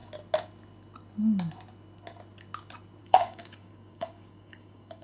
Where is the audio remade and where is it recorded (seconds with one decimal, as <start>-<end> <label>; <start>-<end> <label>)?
0.0-3.0 recorded; 3.0-5.0 remade

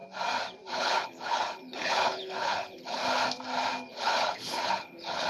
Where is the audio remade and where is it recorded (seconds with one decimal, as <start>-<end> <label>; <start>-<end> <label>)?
0.0-0.7 recorded; 0.7-3.0 remade; 3.0-3.9 recorded; 3.9-5.3 remade

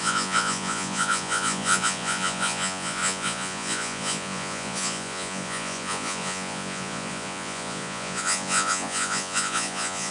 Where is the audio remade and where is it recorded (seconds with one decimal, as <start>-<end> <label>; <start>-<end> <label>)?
0.0-10.1 remade

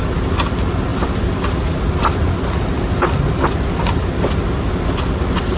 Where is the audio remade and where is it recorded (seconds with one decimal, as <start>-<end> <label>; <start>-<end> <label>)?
0.0-5.6 recorded

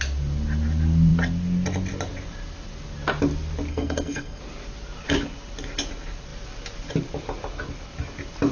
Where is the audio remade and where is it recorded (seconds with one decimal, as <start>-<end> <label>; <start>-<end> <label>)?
0.0-3.7 recorded; 3.7-4.4 remade; 4.4-8.5 recorded